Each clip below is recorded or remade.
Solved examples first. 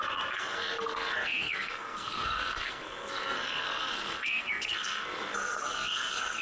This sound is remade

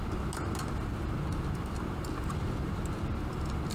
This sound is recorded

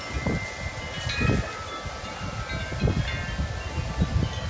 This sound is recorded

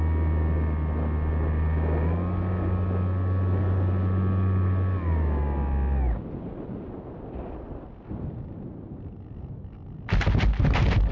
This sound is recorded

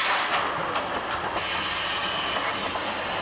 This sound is recorded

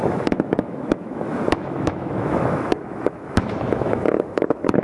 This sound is remade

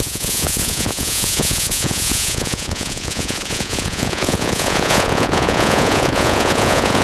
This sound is remade